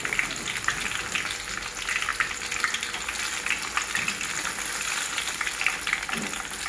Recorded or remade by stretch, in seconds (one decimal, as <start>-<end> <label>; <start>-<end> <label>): 0.0-6.7 recorded